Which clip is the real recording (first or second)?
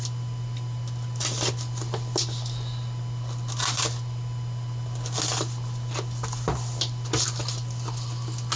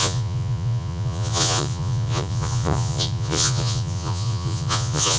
first